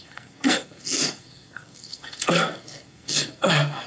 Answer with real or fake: fake